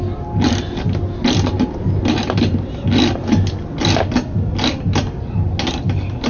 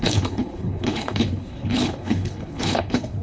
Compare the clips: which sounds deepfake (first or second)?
second